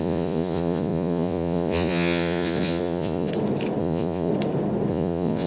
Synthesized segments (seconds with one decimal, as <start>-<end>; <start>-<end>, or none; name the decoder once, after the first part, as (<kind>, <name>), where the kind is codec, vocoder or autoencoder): 0.0-3.3 (vocoder, Vocos); 3.8-4.3; 4.9-5.5